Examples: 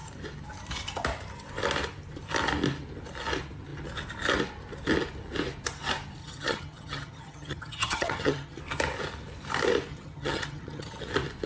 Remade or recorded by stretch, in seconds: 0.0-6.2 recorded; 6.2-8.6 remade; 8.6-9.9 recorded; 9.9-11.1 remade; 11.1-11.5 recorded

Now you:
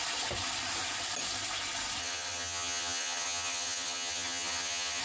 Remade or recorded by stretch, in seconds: 0.0-2.0 recorded; 2.0-5.0 remade

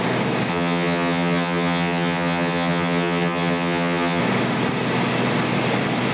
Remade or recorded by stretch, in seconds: 0.0-0.5 recorded; 0.5-4.2 remade; 4.2-6.1 recorded

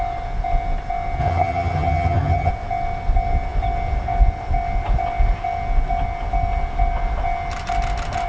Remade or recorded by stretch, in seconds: 0.0-1.2 recorded; 1.2-2.5 remade; 2.5-8.3 recorded

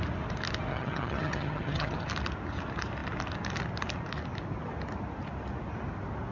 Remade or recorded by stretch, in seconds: 0.0-0.7 recorded; 0.7-2.1 remade; 2.1-6.3 recorded

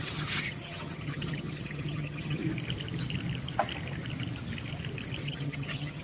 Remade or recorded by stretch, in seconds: 0.0-2.4 remade; 2.4-5.2 recorded; 5.2-6.0 remade

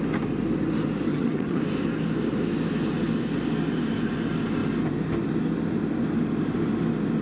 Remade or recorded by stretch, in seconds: 0.0-1.1 recorded; 1.1-1.6 remade; 1.6-7.2 recorded

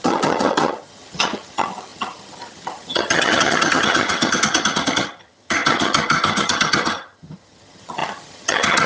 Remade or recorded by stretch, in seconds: 0.0-8.9 remade